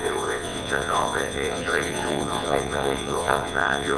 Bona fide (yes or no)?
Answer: no